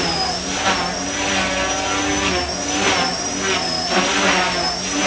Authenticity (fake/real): real